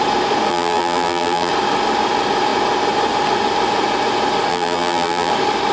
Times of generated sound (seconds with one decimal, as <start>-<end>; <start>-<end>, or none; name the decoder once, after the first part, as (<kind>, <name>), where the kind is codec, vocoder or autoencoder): 0.5-1.5 (vocoder, BigVGAN v2); 4.5-5.3